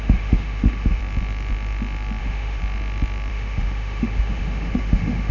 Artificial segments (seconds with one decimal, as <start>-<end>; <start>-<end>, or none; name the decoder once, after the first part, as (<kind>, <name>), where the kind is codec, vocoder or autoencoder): 0.0-1.0 (autoencoder, DAC-VAE); 2.2-2.6; 3.3-5.3